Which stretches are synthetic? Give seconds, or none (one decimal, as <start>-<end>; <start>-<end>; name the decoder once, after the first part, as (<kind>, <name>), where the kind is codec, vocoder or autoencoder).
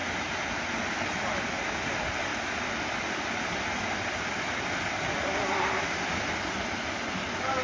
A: none